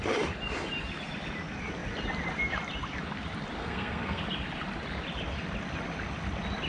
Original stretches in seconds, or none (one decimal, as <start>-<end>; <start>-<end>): 0.0-3.6; 4.2-6.7